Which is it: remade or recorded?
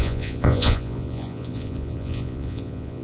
remade